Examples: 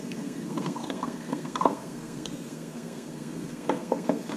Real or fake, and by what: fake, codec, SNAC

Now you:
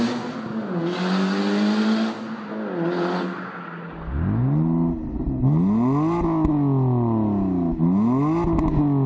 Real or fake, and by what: real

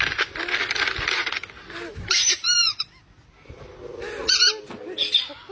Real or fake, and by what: real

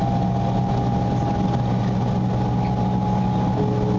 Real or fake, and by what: real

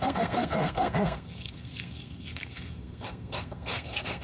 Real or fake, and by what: fake, codec, SNAC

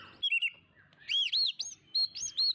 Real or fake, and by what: real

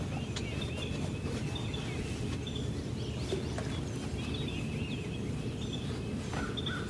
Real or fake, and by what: real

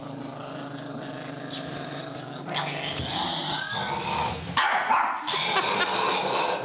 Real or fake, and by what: real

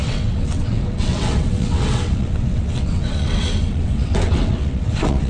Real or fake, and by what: fake, vocoder, WaveNeXt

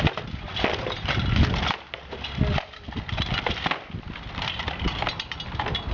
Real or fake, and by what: real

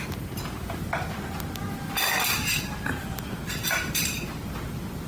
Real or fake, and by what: real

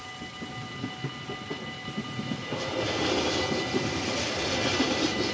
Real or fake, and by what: real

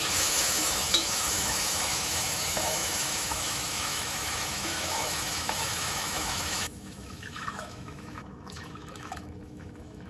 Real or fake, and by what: fake, autoencoder, DAC-VAE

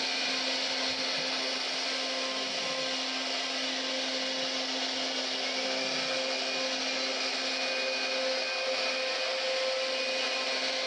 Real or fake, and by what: real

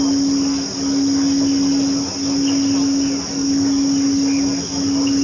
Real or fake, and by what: real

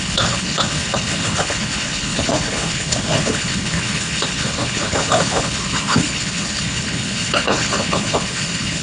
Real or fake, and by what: fake, codec, HILCodec